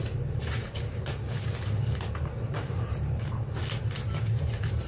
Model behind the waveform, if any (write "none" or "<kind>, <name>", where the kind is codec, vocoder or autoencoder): vocoder, BigVGAN v2